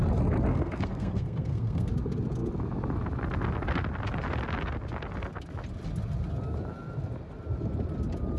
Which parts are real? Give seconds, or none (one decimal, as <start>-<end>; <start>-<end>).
0.0-0.5; 1.9-8.4